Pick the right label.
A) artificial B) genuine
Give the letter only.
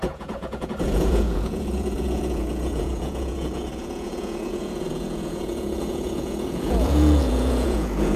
A